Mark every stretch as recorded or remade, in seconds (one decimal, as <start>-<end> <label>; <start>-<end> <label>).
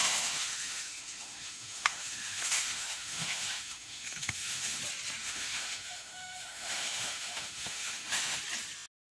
0.0-4.8 remade; 4.8-5.2 recorded; 5.2-8.4 remade; 8.4-9.1 recorded